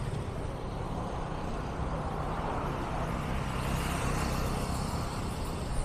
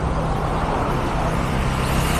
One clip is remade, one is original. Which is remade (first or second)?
first